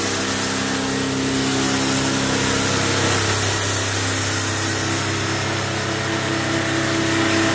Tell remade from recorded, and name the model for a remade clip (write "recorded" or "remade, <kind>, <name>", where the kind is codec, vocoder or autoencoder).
recorded